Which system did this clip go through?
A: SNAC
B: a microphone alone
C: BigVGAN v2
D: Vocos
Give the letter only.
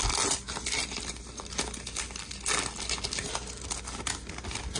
B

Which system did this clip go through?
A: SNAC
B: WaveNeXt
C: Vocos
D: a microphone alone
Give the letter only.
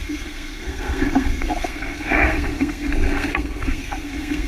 A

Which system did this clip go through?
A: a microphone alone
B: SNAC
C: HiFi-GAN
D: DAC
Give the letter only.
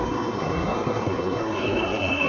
B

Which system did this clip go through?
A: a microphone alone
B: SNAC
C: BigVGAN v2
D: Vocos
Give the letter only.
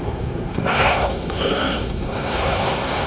B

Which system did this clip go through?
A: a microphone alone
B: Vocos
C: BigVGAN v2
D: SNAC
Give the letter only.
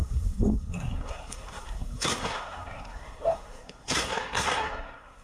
D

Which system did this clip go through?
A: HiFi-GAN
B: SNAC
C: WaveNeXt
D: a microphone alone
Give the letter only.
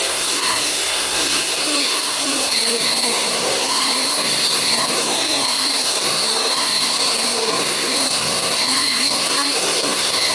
B